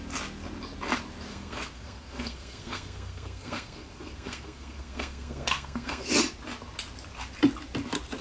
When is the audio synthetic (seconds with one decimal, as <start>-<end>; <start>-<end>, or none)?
1.3-6.2